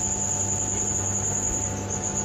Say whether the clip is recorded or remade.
recorded